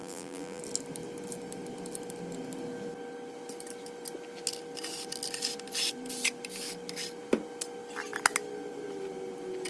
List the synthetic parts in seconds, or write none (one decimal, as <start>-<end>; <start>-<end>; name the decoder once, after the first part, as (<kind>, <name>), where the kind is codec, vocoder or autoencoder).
0.0-0.6 (vocoder, BigVGAN v2)